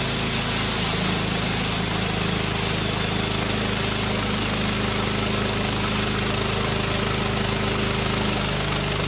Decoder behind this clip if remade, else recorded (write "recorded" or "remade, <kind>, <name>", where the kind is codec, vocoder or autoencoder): recorded